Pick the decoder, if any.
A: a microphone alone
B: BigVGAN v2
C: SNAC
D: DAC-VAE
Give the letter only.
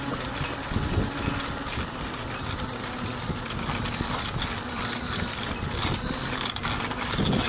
A